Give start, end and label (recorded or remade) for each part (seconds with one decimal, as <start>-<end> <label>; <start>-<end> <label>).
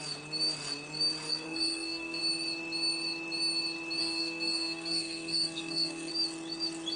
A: 0.0-1.3 recorded; 1.3-2.2 remade; 2.2-4.0 recorded; 4.0-6.1 remade; 6.1-7.0 recorded